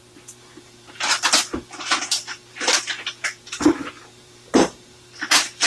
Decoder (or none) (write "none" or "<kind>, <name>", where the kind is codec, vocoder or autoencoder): vocoder, BigVGAN v2